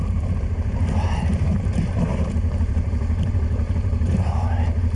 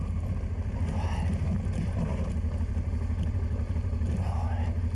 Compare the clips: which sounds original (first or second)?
second